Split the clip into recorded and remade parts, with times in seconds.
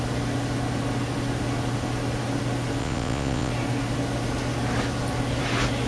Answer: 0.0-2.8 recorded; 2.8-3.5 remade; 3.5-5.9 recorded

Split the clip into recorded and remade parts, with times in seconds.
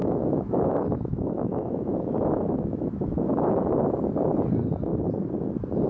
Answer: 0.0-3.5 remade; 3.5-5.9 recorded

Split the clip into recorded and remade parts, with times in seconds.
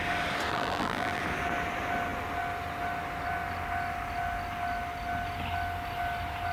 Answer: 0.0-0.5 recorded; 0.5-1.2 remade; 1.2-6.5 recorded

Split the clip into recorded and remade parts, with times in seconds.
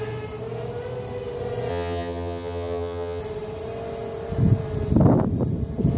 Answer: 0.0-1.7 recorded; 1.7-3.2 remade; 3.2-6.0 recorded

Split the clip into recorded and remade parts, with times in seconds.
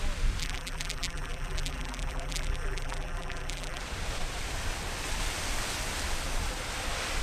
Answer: 0.0-0.4 recorded; 0.4-3.8 remade; 3.8-7.2 recorded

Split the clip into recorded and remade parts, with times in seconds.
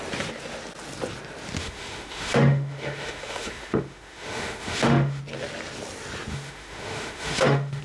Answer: 0.0-1.6 recorded; 1.6-5.2 remade; 5.2-6.3 recorded; 6.3-7.8 remade